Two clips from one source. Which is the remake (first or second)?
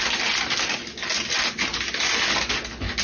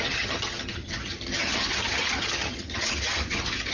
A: second